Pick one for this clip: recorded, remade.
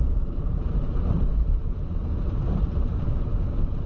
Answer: remade